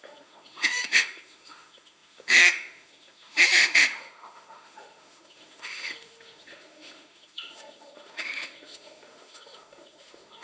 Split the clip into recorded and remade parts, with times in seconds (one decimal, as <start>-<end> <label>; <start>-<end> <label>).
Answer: 0.0-10.4 remade